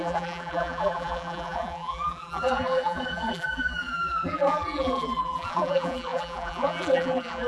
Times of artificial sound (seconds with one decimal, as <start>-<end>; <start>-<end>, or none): 0.0-7.5